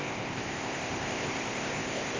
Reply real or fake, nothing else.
fake